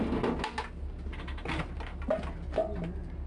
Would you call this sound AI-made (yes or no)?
no